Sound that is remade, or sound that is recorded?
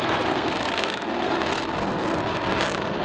remade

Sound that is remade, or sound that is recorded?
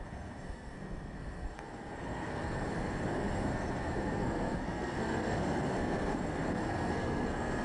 remade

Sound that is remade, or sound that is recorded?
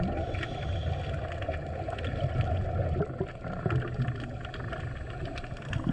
recorded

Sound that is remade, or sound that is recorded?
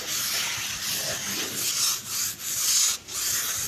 recorded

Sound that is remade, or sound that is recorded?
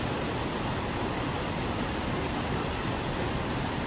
recorded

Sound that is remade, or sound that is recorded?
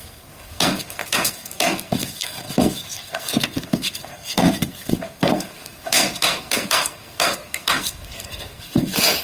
remade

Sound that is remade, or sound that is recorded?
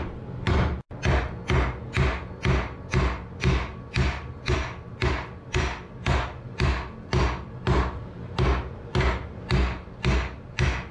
recorded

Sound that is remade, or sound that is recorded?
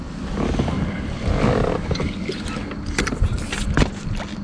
recorded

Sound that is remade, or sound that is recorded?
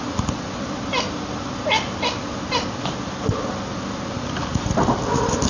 recorded